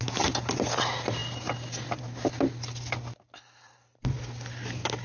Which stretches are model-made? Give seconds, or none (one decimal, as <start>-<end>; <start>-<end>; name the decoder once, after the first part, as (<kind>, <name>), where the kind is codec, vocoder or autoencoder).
none

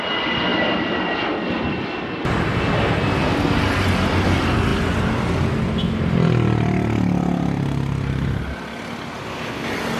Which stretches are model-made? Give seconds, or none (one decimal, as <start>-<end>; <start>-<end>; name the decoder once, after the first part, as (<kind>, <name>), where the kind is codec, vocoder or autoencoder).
none

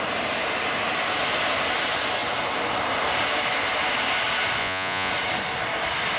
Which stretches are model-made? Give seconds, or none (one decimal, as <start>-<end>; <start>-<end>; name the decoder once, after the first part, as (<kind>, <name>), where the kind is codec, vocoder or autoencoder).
4.6-5.1 (vocoder, Vocos)

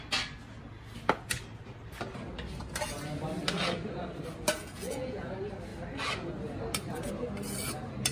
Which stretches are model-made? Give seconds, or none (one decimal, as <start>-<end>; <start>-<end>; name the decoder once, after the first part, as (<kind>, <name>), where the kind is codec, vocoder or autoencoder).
4.6-5.3 (vocoder, Vocos)

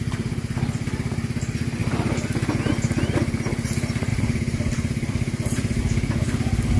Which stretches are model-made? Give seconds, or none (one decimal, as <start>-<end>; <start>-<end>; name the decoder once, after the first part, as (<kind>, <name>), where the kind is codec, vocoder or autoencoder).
1.8-2.6 (vocoder, BigVGAN v2); 4.1-5.8

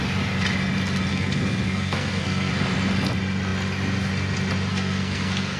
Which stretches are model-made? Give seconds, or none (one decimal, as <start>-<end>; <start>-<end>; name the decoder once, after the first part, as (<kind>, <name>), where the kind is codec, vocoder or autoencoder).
1.1-2.5 (codec, SNAC); 4.7-5.6